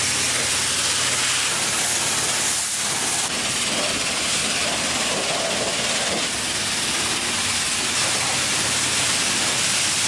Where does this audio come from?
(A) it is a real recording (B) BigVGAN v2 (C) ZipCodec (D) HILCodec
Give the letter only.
A